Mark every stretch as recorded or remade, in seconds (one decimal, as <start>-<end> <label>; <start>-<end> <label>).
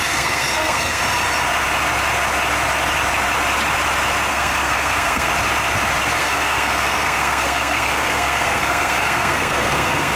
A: 0.0-1.0 remade; 1.0-4.3 recorded; 4.3-5.3 remade; 5.3-6.2 recorded; 6.2-10.2 remade